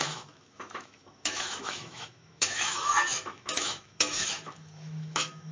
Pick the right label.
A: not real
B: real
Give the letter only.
A